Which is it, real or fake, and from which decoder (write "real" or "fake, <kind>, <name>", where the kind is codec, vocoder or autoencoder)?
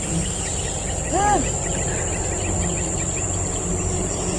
real